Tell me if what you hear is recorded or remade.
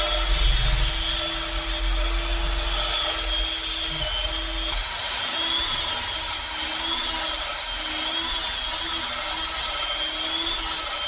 recorded